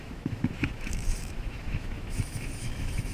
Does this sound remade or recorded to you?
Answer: remade